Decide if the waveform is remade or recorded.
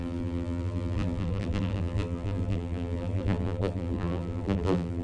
remade